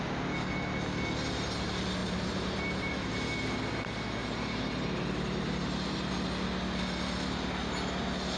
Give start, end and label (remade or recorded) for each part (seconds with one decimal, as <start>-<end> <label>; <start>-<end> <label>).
0.0-2.0 recorded; 2.0-3.7 remade; 3.7-4.2 recorded; 4.2-6.1 remade; 6.1-8.4 recorded